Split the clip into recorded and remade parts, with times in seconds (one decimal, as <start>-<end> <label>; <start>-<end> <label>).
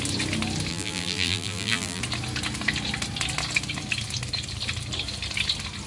0.0-0.7 recorded; 0.7-2.0 remade; 2.0-5.9 recorded